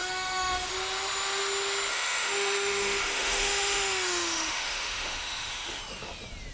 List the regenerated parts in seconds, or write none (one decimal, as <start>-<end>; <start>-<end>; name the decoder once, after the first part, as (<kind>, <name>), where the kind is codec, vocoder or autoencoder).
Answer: 0.0-0.7 (autoencoder, DAC-VAE); 1.9-5.8